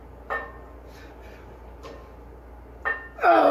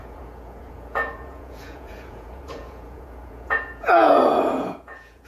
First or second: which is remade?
second